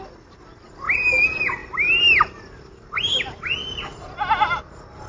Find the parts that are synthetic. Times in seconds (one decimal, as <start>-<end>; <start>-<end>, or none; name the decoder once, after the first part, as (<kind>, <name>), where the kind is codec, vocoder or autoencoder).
none